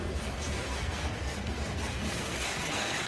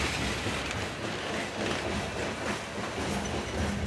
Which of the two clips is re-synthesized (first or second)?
first